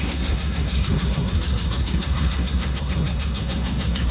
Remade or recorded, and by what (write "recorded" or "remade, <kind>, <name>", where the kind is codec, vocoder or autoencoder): remade, codec, SNAC